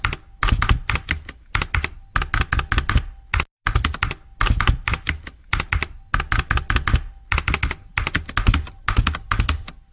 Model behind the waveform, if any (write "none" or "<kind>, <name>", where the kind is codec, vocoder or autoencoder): none